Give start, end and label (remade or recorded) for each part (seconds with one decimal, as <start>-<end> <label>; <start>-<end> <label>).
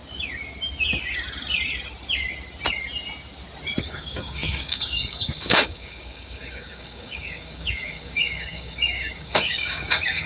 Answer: 0.0-3.8 recorded; 3.8-10.3 remade